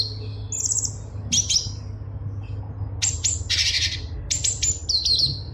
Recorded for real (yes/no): yes